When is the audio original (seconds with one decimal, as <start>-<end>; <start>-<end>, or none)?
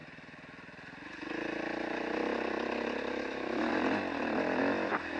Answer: 0.0-3.1; 3.7-4.6